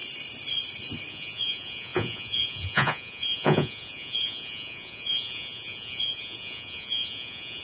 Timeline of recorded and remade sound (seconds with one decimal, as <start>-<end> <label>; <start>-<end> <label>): 0.0-1.1 recorded; 1.1-7.6 remade